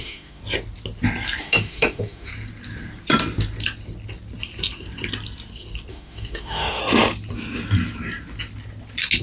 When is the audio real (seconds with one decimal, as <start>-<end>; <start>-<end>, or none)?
0.4-1.4; 2.3-5.9; 6.8-9.2